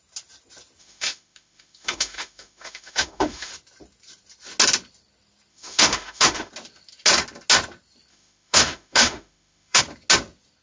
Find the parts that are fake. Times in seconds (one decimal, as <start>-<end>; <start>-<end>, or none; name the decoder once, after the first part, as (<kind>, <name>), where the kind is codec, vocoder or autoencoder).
0.8-3.5 (autoencoder, DAC-VAE); 5.5-6.5; 8.1-9.8